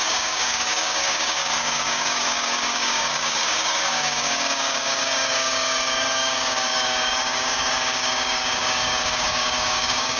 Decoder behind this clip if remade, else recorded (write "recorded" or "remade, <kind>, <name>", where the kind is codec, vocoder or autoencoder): remade, codec, DAC